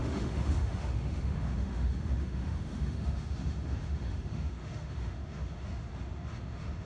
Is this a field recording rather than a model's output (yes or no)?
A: no